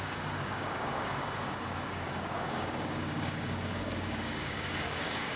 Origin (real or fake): fake